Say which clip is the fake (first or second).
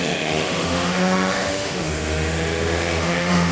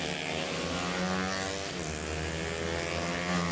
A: first